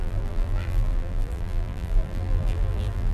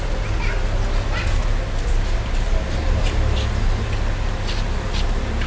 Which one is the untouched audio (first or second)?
second